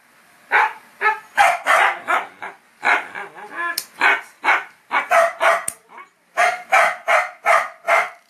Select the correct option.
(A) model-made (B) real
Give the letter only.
B